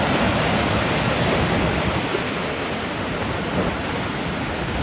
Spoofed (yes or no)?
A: no